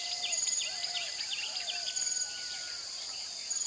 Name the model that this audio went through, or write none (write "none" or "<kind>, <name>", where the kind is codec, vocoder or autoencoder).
none